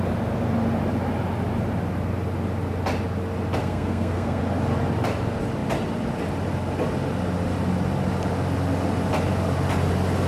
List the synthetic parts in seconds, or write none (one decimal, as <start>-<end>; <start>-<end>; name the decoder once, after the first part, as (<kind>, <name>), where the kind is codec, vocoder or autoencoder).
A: 3.6-4.4 (codec, SNAC)